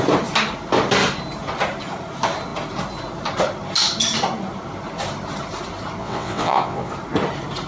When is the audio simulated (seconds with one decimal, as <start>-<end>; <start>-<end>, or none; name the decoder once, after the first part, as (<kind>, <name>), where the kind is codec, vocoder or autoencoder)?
6.0-6.9 (vocoder, WaveNeXt)